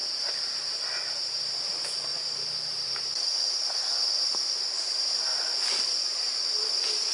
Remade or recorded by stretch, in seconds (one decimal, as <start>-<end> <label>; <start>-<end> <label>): 0.0-1.2 remade; 1.2-2.1 recorded; 2.1-3.5 remade; 3.5-5.3 recorded; 5.3-6.0 remade; 6.0-7.1 recorded